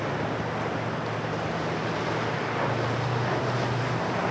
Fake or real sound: real